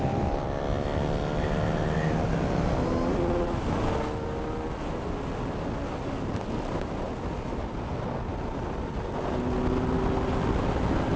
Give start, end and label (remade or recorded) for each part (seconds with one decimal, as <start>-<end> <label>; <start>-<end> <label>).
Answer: 0.0-11.2 recorded